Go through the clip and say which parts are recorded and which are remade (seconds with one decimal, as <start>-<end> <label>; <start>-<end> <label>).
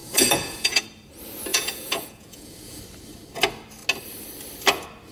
0.0-0.8 remade; 0.8-1.5 recorded; 1.5-2.8 remade; 2.8-5.1 recorded